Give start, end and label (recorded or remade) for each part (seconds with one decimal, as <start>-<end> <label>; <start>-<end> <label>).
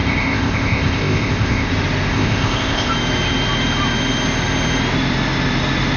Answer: 0.0-1.7 remade; 1.7-2.1 recorded; 2.1-2.9 remade; 2.9-6.0 recorded